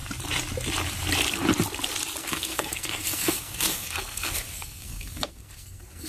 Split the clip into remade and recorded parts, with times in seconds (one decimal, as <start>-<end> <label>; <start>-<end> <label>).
0.0-2.2 recorded; 2.2-6.1 remade